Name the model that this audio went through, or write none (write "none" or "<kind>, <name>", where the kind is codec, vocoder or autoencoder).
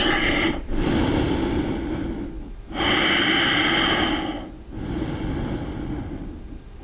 none